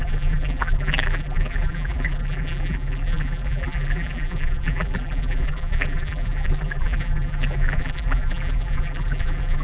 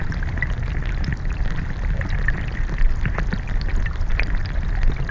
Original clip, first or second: second